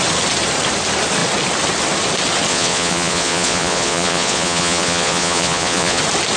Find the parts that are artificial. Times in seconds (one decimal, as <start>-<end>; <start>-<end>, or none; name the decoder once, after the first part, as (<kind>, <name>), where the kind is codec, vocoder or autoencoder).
2.5-6.0 (vocoder, Vocos)